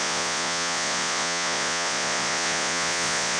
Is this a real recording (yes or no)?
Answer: no